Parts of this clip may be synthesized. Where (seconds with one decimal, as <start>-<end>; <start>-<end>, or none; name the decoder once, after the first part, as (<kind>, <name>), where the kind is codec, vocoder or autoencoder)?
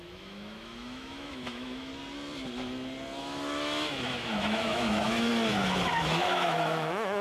0.0-1.9 (autoencoder, DAC-VAE); 3.2-5.3; 6.0-7.2